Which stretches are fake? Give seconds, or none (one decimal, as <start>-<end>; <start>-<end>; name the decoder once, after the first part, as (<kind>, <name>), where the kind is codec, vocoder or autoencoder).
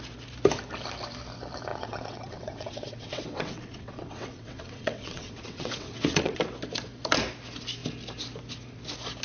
1.7-6.4 (vocoder, WaveNeXt)